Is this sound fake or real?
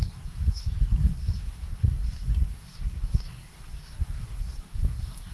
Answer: fake